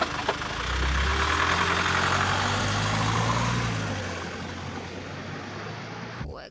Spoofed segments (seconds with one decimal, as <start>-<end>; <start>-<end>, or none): none